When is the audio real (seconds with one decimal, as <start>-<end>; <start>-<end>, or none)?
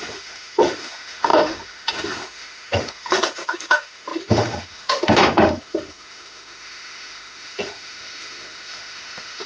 none